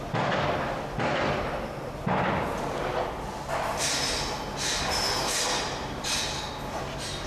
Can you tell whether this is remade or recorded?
recorded